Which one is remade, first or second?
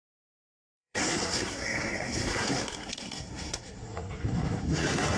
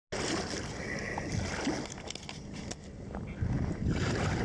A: first